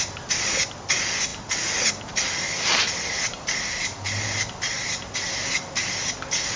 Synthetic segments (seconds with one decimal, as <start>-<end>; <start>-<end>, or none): none